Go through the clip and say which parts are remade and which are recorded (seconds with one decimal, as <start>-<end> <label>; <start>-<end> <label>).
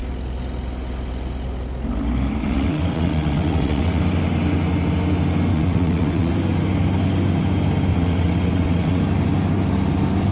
0.0-2.4 recorded; 2.4-4.0 remade; 4.0-5.5 recorded; 5.5-6.3 remade; 6.3-7.9 recorded; 7.9-9.0 remade; 9.0-10.3 recorded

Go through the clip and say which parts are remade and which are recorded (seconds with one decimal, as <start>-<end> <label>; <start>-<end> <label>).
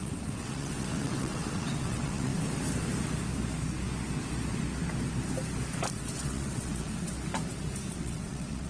0.0-2.3 remade; 2.3-5.9 recorded; 5.9-7.1 remade; 7.1-7.9 recorded; 7.9-8.7 remade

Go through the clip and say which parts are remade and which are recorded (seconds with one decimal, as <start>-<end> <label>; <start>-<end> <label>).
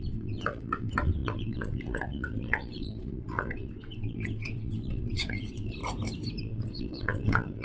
0.0-5.8 remade; 5.8-6.4 recorded; 6.4-7.6 remade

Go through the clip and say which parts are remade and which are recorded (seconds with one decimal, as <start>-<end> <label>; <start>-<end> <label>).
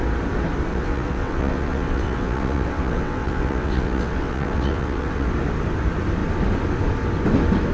0.0-0.7 recorded; 0.7-5.3 remade; 5.3-7.7 recorded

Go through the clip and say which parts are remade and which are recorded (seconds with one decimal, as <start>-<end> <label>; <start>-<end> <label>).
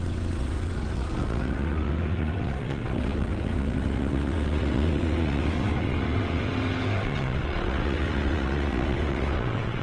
0.0-9.8 remade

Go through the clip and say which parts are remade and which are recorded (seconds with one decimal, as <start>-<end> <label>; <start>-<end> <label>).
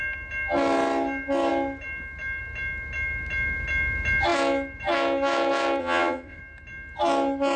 0.0-5.8 recorded; 5.8-6.4 remade; 6.4-7.6 recorded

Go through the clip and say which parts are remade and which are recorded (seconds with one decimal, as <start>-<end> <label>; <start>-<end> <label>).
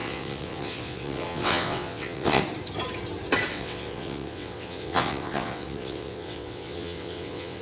0.0-2.4 remade; 2.4-3.5 recorded; 3.5-7.6 remade